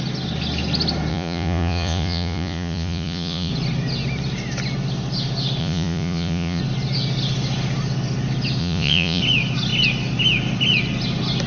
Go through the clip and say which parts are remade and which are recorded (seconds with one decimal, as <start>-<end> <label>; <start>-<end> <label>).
0.0-1.1 recorded; 1.1-3.5 remade; 3.5-5.6 recorded; 5.6-6.6 remade; 6.6-8.6 recorded; 8.6-9.2 remade; 9.2-11.5 recorded

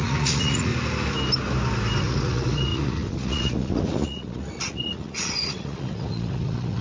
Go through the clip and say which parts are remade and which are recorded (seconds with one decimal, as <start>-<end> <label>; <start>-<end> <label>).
0.0-0.7 remade; 0.7-2.0 recorded; 2.0-6.8 remade

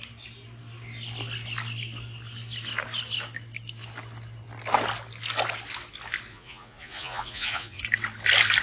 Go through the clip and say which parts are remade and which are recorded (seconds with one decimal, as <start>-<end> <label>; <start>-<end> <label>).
0.0-6.3 recorded; 6.3-7.8 remade; 7.8-8.6 recorded

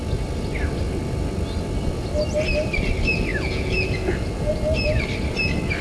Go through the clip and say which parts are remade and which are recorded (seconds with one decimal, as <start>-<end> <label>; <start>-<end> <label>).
0.0-3.3 recorded; 3.3-4.5 remade; 4.5-5.8 recorded

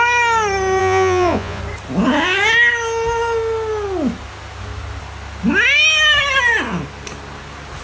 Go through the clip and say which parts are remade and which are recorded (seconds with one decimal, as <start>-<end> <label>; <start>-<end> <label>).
0.0-0.8 recorded; 0.8-1.6 remade; 1.6-7.8 recorded

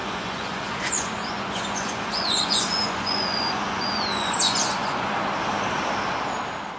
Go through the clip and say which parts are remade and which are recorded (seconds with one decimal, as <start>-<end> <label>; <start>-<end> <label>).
0.0-5.1 remade; 5.1-6.8 recorded